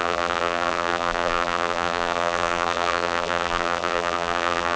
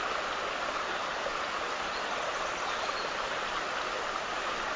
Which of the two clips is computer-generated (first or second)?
first